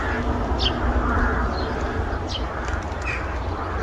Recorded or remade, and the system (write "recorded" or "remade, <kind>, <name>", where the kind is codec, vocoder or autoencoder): recorded